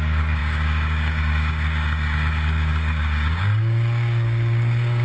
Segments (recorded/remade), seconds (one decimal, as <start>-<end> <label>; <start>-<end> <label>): 0.0-5.0 remade